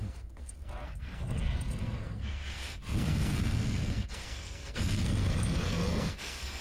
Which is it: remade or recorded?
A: remade